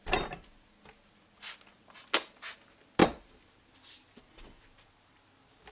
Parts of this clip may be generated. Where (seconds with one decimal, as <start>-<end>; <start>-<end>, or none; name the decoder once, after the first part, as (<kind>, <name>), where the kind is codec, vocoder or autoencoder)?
none